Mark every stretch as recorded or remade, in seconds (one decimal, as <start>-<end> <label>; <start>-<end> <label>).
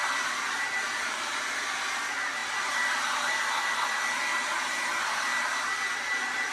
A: 0.0-6.5 recorded